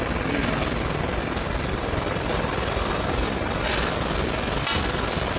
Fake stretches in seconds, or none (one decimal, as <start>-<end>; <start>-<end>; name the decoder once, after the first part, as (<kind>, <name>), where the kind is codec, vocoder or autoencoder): 1.8-3.7 (vocoder, BigVGAN v2)